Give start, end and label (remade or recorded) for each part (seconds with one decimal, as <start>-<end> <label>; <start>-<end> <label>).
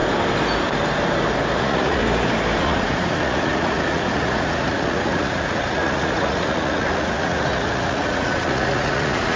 0.0-1.6 recorded; 1.6-2.0 remade; 2.0-2.6 recorded; 2.6-9.4 remade